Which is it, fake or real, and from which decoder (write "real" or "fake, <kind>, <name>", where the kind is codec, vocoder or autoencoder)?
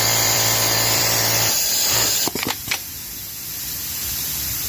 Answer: fake, vocoder, BigVGAN v2